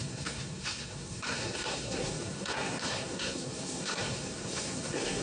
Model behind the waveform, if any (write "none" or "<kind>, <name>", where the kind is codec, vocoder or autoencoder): codec, SNAC